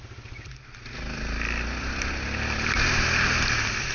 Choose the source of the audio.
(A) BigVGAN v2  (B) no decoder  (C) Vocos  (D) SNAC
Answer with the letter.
B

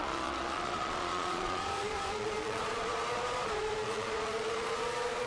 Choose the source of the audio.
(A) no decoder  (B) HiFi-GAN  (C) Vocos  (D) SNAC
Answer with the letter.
C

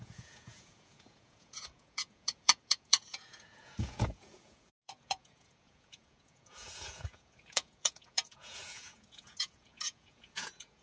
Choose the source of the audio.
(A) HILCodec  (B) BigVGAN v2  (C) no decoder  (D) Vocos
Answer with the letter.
D